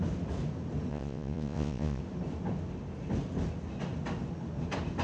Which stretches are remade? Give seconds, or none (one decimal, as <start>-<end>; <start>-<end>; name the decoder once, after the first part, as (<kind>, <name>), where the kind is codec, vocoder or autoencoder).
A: 0.9-2.0 (vocoder, Vocos)